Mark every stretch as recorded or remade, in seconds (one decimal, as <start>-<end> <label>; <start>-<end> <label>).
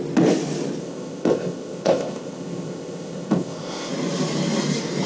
0.0-0.8 recorded; 0.8-3.9 remade; 3.9-5.1 recorded